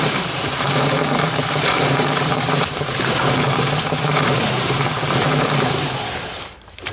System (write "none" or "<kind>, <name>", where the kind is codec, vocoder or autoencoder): vocoder, BigVGAN v2